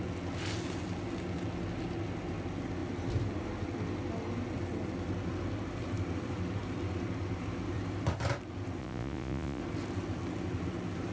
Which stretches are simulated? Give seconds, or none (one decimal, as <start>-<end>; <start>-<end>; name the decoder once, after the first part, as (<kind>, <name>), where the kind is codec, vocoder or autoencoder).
8.8-9.6 (vocoder, Vocos)